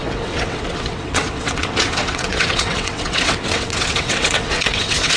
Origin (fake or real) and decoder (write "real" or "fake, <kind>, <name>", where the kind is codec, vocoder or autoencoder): fake, vocoder, WaveNeXt